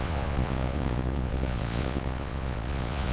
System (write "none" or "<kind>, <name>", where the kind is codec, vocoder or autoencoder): vocoder, Vocos